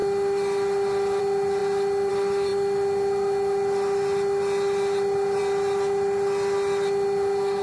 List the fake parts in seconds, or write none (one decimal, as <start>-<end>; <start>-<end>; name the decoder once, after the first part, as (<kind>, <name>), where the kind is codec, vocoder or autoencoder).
none